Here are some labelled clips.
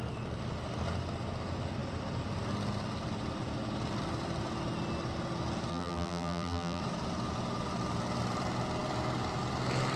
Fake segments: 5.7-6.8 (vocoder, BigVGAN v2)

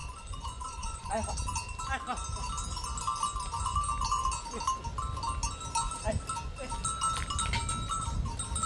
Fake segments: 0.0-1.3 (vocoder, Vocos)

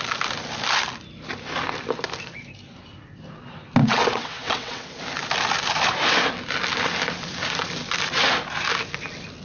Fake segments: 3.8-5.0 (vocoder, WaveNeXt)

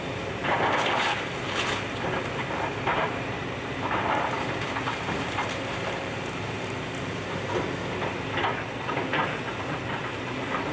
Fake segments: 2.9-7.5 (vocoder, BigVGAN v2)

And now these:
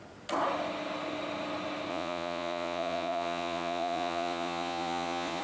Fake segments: 1.9-5.4 (vocoder, Vocos)

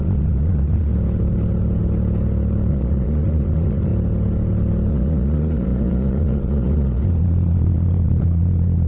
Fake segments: 0.0-0.9 (vocoder, Vocos); 2.7-3.9; 4.9-8.9